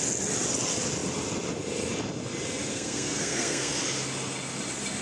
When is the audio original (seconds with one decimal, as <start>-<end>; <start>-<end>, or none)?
0.0-2.7; 3.7-5.0